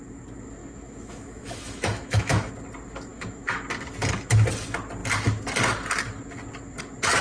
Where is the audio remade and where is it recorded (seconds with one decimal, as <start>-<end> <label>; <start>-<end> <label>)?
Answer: 0.0-0.6 recorded; 0.6-2.5 remade; 2.5-3.1 recorded; 3.1-3.6 remade; 3.6-7.2 recorded